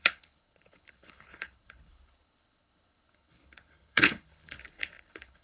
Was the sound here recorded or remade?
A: remade